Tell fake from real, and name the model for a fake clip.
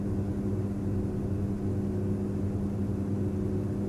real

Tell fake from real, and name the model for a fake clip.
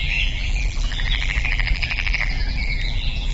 fake, vocoder, BigVGAN v2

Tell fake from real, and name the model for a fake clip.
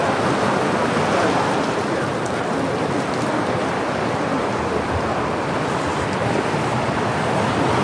fake, vocoder, BigVGAN v2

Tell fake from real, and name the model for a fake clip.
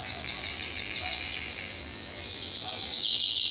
fake, vocoder, BigVGAN v2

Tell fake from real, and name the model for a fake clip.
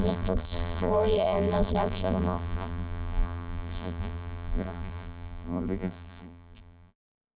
fake, vocoder, BigVGAN v2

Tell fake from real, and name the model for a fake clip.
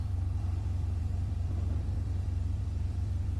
fake, vocoder, BigVGAN v2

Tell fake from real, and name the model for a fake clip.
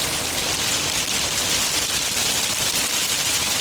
fake, vocoder, BigVGAN v2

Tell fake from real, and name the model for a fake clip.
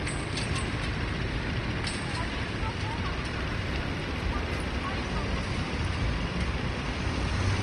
fake, vocoder, BigVGAN v2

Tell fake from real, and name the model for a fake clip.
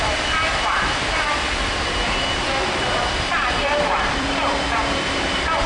fake, vocoder, BigVGAN v2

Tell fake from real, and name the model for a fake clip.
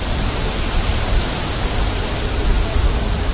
fake, vocoder, BigVGAN v2